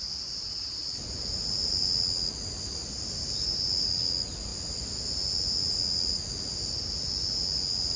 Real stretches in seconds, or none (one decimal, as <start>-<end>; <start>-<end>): 0.0-8.0